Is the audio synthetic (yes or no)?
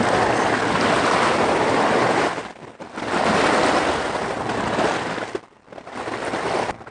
no